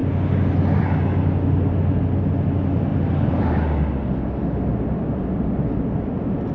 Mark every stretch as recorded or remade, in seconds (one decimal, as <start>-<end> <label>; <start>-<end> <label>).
0.0-6.5 recorded